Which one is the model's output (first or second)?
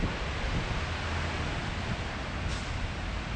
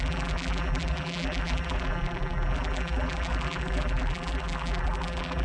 second